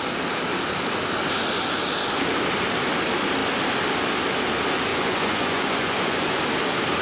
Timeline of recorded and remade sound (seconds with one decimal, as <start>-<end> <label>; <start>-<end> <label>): 0.0-4.9 recorded; 4.9-6.4 remade; 6.4-7.0 recorded